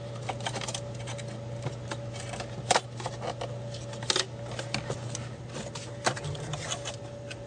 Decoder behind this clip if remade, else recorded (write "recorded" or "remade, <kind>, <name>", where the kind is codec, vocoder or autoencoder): recorded